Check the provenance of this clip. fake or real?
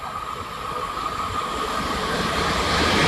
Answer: real